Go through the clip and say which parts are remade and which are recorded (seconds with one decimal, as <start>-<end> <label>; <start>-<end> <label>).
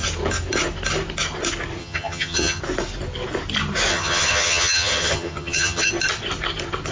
0.0-1.8 recorded; 1.8-2.6 remade; 2.6-3.9 recorded; 3.9-5.9 remade; 5.9-6.9 recorded